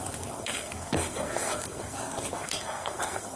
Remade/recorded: remade